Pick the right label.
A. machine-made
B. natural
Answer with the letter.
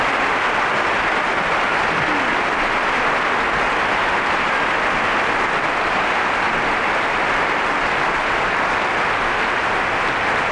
B